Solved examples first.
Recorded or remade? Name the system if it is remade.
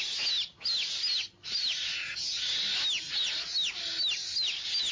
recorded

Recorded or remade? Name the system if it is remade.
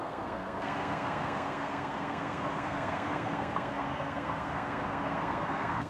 remade, codec, SNAC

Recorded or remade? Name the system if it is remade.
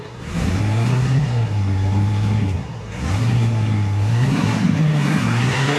remade, codec, SNAC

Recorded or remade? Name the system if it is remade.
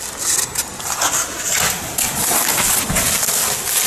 recorded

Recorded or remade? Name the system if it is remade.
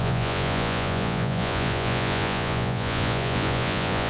remade, vocoder, Vocos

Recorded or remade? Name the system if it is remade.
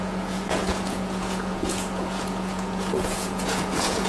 remade, vocoder, Vocos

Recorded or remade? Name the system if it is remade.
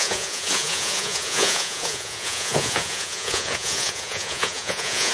remade, vocoder, Vocos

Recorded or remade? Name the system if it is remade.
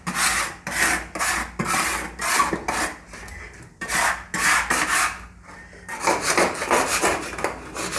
recorded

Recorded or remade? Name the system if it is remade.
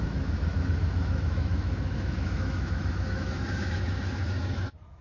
remade, autoencoder, DAC-VAE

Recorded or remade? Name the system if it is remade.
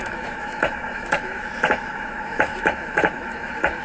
remade, autoencoder, DAC-VAE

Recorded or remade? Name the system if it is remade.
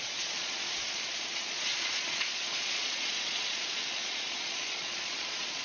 remade, vocoder, Vocos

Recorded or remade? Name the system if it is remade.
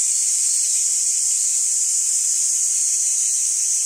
recorded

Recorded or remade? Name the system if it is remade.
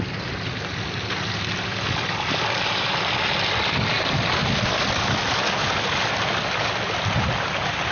recorded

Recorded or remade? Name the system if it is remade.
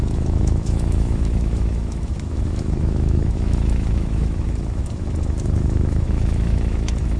remade, autoencoder, DAC-VAE